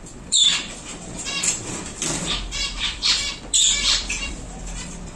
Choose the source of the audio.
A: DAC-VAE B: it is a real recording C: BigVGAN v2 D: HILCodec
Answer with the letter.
C